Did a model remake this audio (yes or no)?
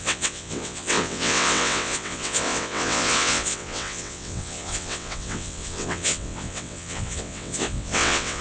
yes